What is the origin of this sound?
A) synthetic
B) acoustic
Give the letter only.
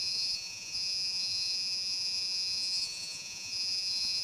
A